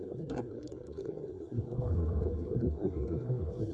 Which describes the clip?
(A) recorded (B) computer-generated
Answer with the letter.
B